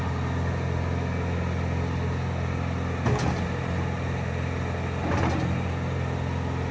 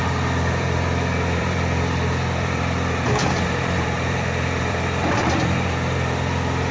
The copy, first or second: second